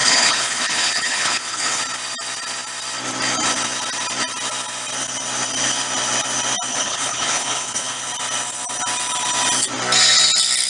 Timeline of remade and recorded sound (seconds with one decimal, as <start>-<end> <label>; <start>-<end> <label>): 0.0-1.8 remade; 1.8-6.7 recorded; 6.7-8.0 remade; 8.0-10.7 recorded